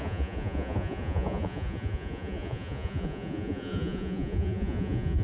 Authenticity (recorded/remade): remade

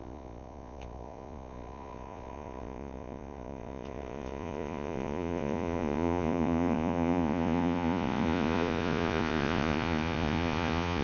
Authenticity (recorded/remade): remade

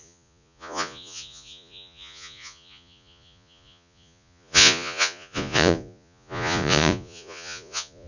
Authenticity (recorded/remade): remade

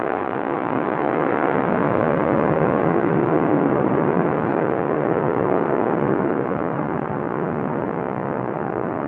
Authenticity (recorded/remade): remade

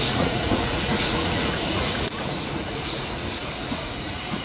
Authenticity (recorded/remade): remade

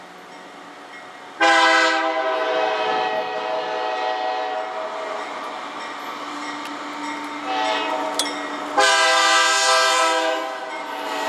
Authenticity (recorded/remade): recorded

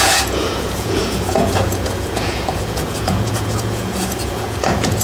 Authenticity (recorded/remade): remade